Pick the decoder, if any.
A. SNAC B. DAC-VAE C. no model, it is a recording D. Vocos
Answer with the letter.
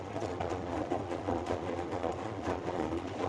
D